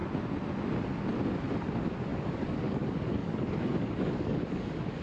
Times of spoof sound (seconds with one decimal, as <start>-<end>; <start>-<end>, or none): 2.1-5.0